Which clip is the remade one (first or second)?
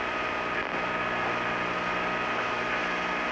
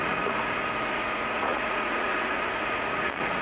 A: second